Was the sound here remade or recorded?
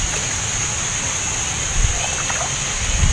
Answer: recorded